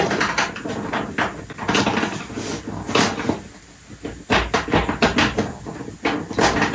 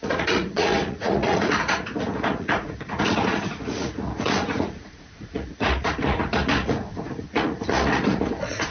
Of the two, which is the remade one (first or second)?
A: second